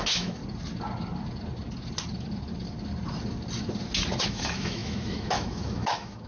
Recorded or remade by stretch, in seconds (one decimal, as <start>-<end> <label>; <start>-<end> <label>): 0.0-0.4 remade; 0.4-4.2 recorded; 4.2-6.3 remade